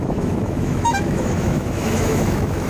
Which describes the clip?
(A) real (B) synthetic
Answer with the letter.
B